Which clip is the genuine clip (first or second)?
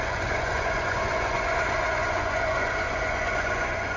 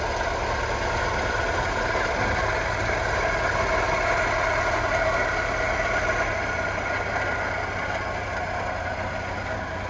second